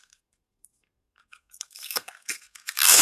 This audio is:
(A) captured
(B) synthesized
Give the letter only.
B